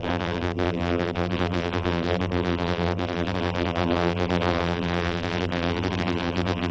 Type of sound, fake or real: fake